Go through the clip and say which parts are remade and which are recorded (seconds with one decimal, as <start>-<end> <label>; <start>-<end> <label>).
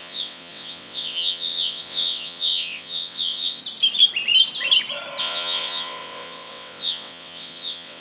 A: 0.0-3.6 remade; 3.6-5.2 recorded; 5.2-8.0 remade